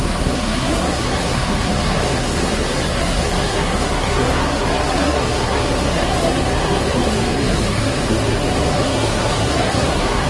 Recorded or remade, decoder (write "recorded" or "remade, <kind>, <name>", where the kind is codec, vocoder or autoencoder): remade, codec, SNAC